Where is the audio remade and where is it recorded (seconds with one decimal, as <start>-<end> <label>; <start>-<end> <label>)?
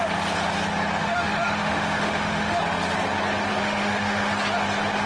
0.0-1.0 recorded; 1.0-2.6 remade; 2.6-3.6 recorded; 3.6-4.3 remade; 4.3-5.1 recorded